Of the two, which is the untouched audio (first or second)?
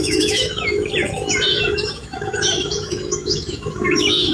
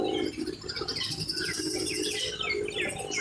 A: second